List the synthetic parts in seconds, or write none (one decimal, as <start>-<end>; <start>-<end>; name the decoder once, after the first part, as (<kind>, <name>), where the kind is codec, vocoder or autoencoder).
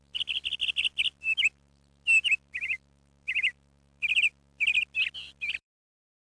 0.0-4.3 (vocoder, BigVGAN v2); 5.2-6.3